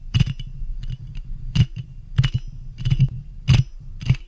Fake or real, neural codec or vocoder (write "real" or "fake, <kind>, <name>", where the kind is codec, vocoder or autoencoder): real